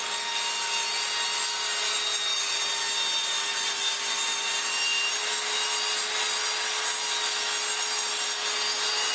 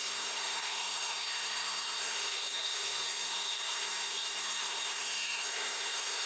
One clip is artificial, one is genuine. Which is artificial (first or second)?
second